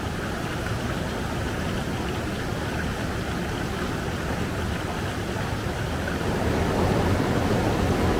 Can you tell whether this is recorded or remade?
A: recorded